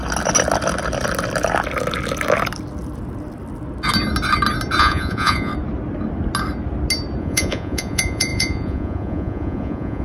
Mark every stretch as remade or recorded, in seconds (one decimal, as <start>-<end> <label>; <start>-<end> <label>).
0.0-4.8 recorded; 4.8-5.5 remade; 5.5-7.2 recorded; 7.2-10.0 remade